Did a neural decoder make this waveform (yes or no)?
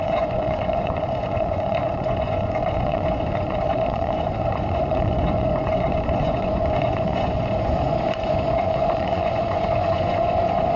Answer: yes